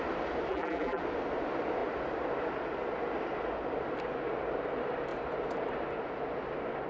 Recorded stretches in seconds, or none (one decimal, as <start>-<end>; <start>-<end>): 0.0-0.5; 1.0-6.9